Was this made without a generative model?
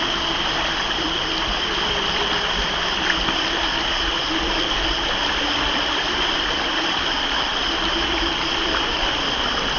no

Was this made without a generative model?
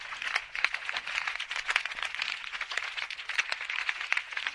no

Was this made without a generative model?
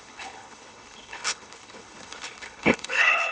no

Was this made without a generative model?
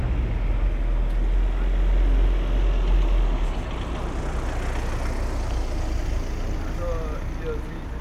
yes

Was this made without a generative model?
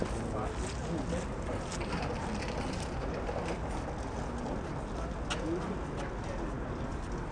yes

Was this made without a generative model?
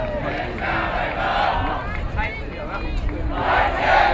yes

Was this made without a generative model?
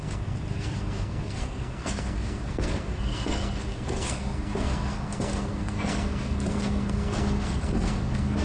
no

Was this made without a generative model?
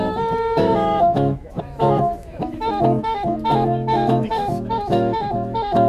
no